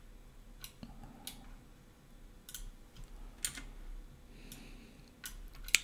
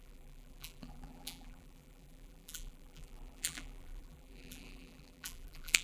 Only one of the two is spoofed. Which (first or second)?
second